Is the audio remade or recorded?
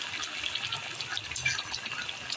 recorded